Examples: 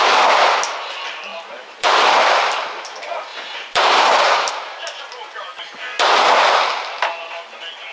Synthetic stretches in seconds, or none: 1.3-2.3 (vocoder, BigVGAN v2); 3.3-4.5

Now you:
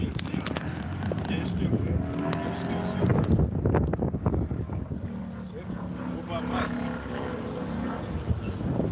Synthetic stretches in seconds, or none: none